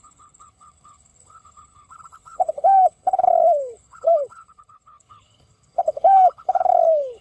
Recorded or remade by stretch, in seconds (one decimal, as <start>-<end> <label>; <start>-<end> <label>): 0.0-7.2 remade